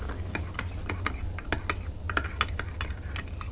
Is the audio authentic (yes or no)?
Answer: yes